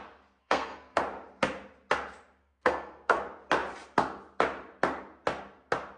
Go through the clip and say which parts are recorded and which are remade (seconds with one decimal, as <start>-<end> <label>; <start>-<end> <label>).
0.0-0.4 recorded; 0.4-1.0 remade; 1.0-2.4 recorded; 2.4-3.2 remade; 3.2-6.0 recorded